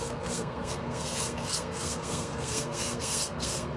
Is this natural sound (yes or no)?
no